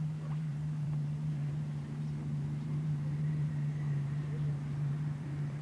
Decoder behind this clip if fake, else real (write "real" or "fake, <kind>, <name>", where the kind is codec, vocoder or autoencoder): fake, vocoder, BigVGAN v2